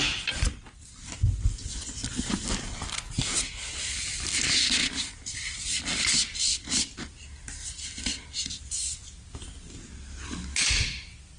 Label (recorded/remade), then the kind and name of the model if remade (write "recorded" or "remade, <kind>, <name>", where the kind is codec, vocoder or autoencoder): recorded